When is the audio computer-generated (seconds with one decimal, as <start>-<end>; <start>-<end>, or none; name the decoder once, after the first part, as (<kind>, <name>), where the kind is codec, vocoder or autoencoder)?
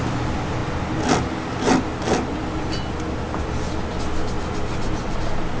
none